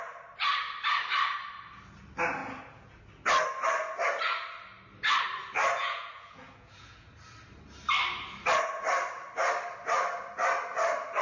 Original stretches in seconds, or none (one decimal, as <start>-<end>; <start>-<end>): 0.0-2.4; 3.0-5.7; 7.1-11.2